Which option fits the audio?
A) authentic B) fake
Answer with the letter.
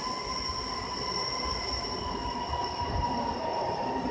A